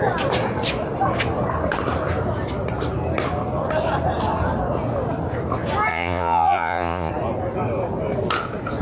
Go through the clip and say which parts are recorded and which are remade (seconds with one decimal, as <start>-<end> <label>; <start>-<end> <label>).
0.0-5.9 recorded; 5.9-7.1 remade; 7.1-8.8 recorded